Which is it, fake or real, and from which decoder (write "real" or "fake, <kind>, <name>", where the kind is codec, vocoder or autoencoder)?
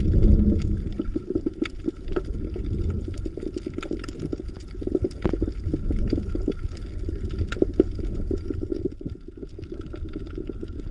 real